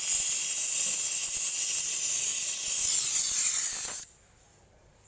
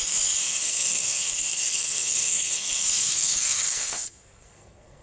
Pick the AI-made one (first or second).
second